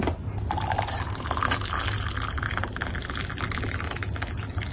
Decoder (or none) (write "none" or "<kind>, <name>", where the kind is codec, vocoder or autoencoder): none